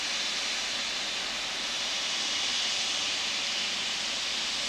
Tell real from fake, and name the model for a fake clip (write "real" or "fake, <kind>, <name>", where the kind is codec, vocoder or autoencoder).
real